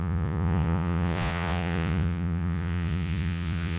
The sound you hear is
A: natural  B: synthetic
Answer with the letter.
B